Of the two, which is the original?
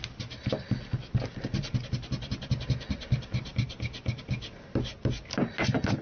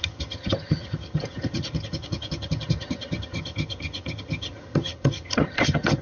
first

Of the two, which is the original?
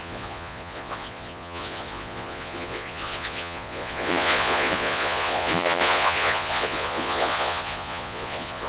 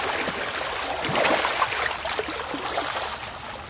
second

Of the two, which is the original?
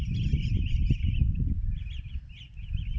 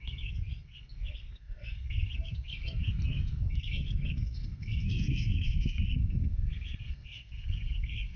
first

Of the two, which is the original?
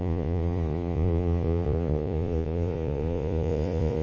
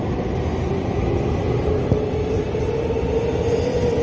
second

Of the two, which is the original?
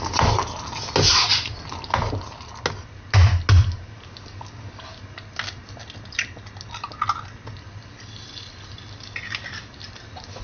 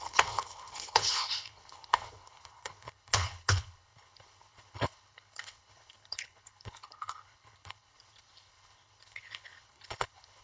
first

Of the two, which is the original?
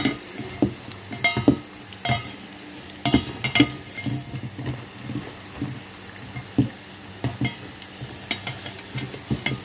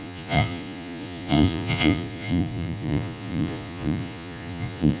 first